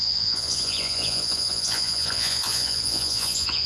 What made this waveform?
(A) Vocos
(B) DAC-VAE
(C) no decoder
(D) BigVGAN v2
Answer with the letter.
A